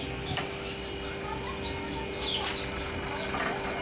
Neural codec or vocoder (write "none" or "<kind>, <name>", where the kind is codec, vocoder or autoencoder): none